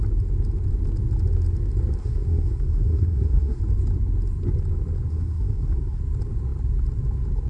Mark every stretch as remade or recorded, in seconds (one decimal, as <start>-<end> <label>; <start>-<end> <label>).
0.0-2.0 recorded; 2.0-3.6 remade; 3.6-5.1 recorded; 5.1-6.0 remade; 6.0-7.5 recorded